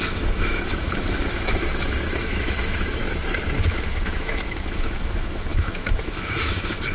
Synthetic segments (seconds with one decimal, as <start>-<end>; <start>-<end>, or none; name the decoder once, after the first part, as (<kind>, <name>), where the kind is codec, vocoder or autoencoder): 0.0-3.0 (autoencoder, DAC-VAE); 3.6-6.9